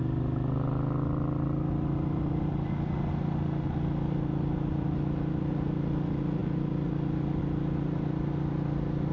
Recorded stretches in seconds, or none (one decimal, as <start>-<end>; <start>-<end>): 0.0-9.1